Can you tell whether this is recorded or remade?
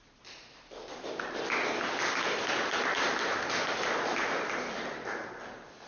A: recorded